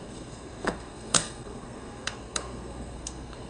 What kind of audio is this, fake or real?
fake